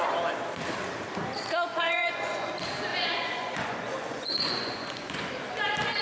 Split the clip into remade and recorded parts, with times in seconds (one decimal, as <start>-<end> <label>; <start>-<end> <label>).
0.0-1.7 recorded; 1.7-2.5 remade; 2.5-2.9 recorded; 2.9-5.3 remade; 5.3-6.0 recorded